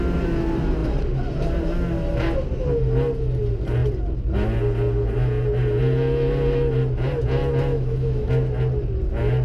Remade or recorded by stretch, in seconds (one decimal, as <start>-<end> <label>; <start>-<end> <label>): 0.0-7.7 recorded; 7.7-8.3 remade; 8.3-9.4 recorded